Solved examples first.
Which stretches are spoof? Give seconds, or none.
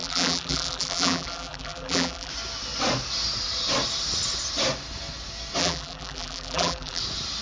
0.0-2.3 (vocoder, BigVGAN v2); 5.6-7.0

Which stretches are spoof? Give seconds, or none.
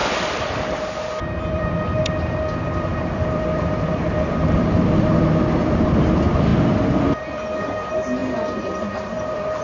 1.4-6.5 (vocoder, BigVGAN v2); 7.0-8.2; 8.7-9.6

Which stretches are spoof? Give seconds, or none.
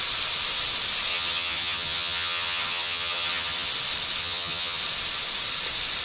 1.1-3.7 (vocoder, HiFi-GAN); 4.2-4.8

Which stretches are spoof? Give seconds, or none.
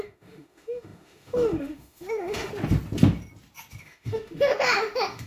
0.0-2.5 (autoencoder, DAC-VAE); 3.8-5.3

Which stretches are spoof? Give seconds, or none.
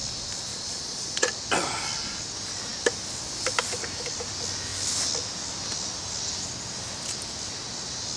0.5-1.3 (vocoder, Vocos)